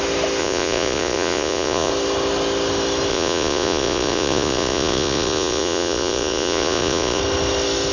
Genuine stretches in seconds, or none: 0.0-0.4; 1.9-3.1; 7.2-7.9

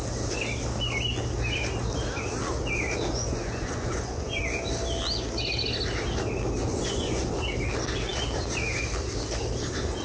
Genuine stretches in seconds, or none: 0.0-3.1; 4.4-6.6; 7.2-10.0